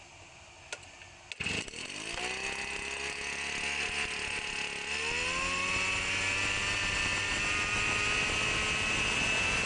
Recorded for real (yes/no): yes